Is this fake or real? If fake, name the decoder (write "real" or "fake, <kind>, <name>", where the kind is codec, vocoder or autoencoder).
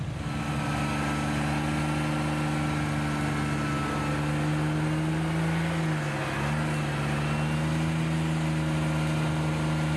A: real